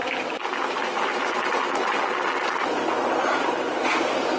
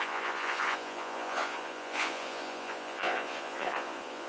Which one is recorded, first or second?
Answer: first